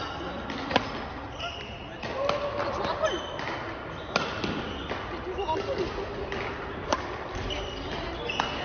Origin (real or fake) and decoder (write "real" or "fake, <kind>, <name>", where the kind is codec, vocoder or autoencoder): real